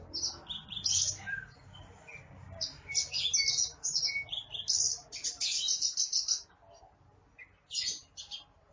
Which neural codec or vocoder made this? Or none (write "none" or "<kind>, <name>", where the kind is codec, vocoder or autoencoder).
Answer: none